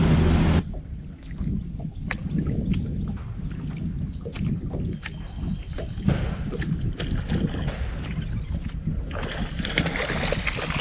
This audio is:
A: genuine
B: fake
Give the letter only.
A